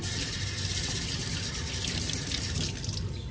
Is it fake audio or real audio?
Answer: real